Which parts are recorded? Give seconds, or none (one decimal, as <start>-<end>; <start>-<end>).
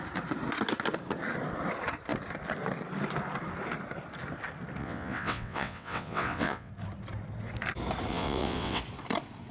0.0-4.8; 6.7-8.1; 8.8-9.5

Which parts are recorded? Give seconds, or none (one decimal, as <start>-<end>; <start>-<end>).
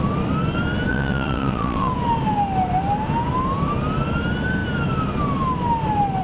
0.0-0.9; 1.9-6.2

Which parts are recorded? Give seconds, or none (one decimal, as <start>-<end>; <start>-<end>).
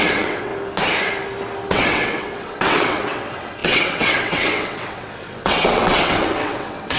0.5-1.7